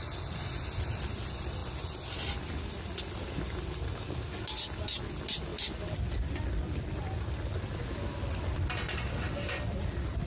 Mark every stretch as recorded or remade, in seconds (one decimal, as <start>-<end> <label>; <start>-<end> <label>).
0.0-10.3 recorded